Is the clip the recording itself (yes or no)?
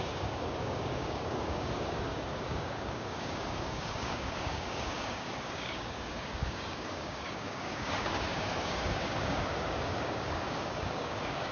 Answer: no